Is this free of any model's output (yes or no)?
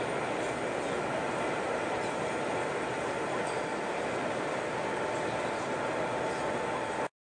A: yes